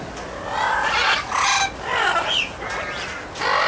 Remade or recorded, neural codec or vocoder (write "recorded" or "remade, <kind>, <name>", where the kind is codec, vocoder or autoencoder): recorded